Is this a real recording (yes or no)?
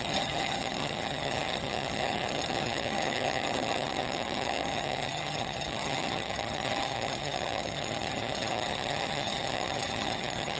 no